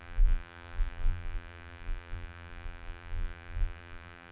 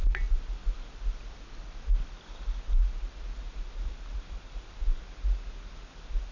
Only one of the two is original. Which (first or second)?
second